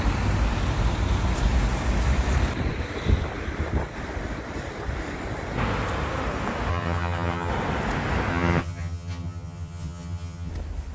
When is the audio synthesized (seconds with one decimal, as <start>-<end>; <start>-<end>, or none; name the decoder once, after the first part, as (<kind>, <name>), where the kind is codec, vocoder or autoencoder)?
6.7-7.5 (vocoder, HiFi-GAN); 8.3-10.5